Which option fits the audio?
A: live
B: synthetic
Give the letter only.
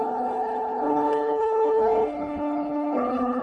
B